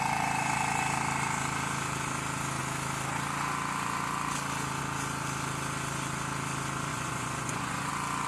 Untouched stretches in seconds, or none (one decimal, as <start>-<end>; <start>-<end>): 0.0-6.9; 7.9-8.3